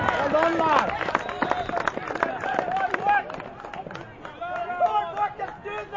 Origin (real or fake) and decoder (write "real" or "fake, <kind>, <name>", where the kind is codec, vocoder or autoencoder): real